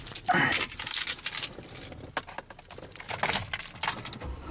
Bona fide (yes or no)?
yes